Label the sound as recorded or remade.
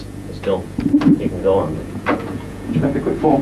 remade